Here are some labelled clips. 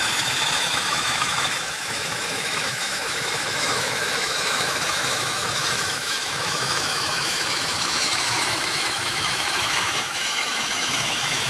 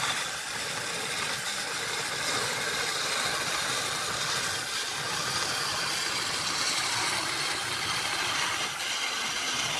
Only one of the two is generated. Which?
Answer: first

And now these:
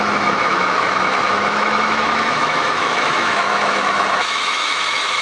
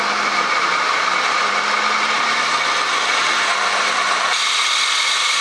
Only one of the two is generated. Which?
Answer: first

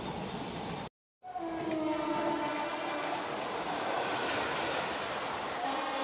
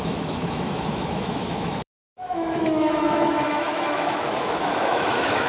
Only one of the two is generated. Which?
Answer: second